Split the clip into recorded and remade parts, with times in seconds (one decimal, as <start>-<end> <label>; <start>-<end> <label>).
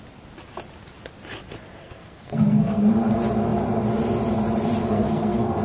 0.0-1.8 recorded; 1.8-2.9 remade; 2.9-4.8 recorded; 4.8-5.6 remade